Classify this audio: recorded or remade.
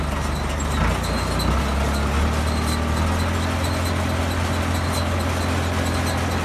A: recorded